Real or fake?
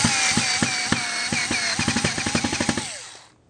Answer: real